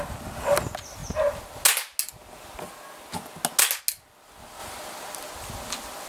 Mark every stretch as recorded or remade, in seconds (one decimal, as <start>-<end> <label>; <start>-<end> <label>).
0.0-6.1 recorded